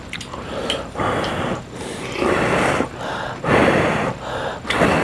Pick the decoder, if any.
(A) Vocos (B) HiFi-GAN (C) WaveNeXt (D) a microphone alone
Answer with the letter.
D